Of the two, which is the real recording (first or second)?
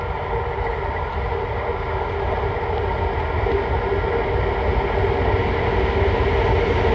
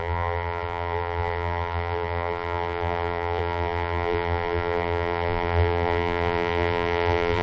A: first